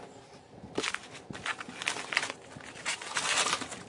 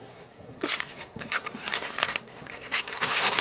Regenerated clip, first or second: second